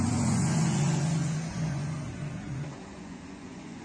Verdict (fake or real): fake